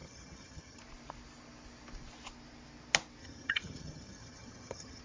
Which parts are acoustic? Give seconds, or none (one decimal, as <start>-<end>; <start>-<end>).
0.8-3.2